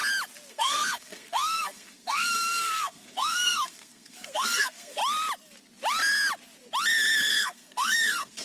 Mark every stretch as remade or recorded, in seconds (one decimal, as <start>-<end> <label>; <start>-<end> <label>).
0.0-0.5 recorded; 0.5-5.0 remade; 5.0-7.3 recorded; 7.3-8.4 remade

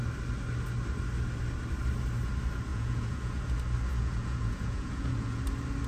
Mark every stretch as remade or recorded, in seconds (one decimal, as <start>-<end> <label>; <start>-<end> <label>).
0.0-2.7 recorded; 2.7-3.4 remade; 3.4-3.9 recorded; 3.9-5.4 remade; 5.4-5.9 recorded

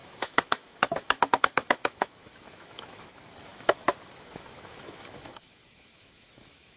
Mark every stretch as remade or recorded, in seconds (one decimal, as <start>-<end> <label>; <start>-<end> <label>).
0.0-6.8 remade

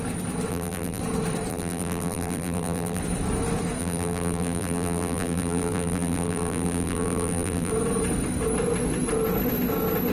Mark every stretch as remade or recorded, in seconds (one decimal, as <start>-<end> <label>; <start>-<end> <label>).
0.0-0.5 recorded; 0.5-1.0 remade; 1.0-1.5 recorded; 1.5-3.0 remade; 3.0-3.8 recorded; 3.8-7.7 remade; 7.7-10.1 recorded

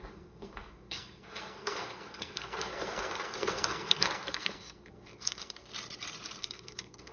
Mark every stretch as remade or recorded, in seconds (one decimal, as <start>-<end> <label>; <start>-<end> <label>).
0.0-5.7 remade; 5.7-6.4 recorded; 6.4-7.1 remade

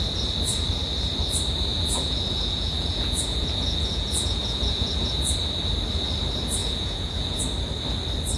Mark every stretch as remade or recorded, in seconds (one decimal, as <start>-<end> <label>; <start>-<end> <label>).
0.0-1.7 recorded; 1.7-5.2 remade; 5.2-6.6 recorded; 6.6-7.4 remade; 7.4-8.4 recorded